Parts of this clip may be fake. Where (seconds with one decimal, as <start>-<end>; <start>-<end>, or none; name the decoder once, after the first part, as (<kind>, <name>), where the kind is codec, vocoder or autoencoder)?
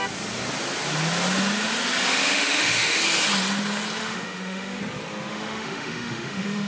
2.2-3.0 (autoencoder, DAC-VAE); 4.0-4.8; 5.3-6.7